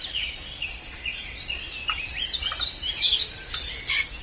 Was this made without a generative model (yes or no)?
yes